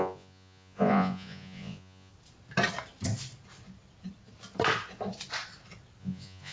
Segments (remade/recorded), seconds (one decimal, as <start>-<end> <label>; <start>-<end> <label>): 0.0-2.1 remade; 2.1-6.0 recorded; 6.0-6.5 remade